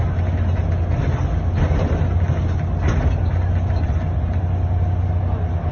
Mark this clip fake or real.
real